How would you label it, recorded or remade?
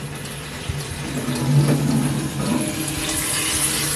recorded